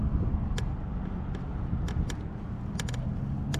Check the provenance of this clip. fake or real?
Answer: real